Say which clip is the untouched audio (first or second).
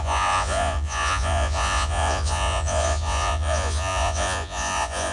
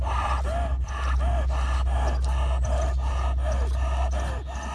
second